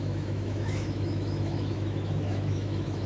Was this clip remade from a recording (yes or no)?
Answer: yes